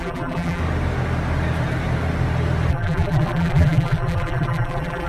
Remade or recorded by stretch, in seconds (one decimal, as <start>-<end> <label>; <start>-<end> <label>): 0.0-0.6 remade; 0.6-2.7 recorded; 2.7-5.1 remade